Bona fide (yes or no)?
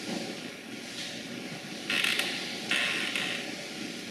yes